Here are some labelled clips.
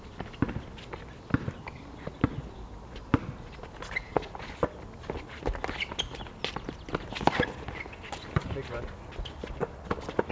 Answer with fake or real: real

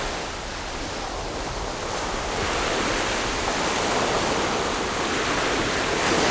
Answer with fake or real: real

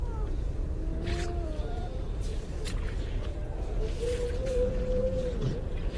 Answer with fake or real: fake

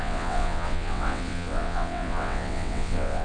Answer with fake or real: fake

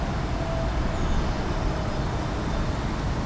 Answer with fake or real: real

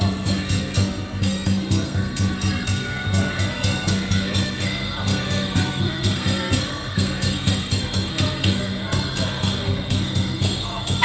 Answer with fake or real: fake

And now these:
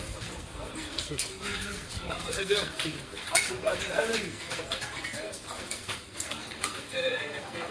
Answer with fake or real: fake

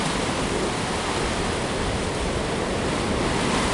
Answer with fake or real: real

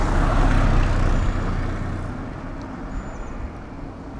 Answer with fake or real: real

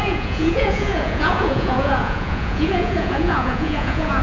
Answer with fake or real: fake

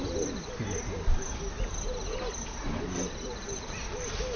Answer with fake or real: real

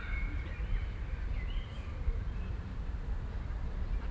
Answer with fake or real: fake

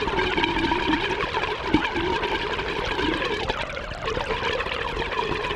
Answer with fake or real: real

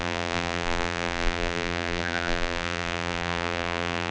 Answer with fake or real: fake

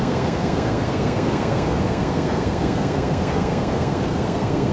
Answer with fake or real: fake